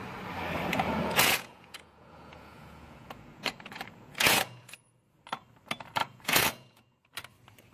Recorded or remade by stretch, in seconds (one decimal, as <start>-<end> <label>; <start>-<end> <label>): 0.0-0.7 recorded; 0.7-5.0 remade; 5.0-6.0 recorded; 6.0-7.0 remade; 7.0-7.7 recorded